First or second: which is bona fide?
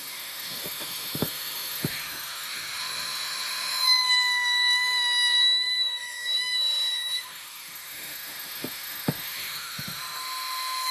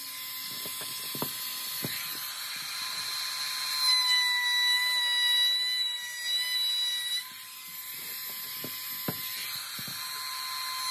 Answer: second